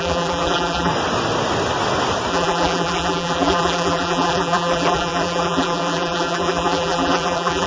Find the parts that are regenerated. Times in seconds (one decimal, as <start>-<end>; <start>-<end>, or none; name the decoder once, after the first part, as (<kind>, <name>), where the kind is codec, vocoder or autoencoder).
0.0-0.9 (vocoder, BigVGAN v2); 2.3-7.7